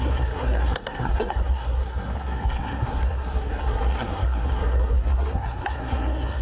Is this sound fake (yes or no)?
yes